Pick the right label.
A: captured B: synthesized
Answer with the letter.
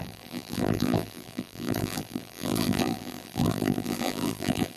B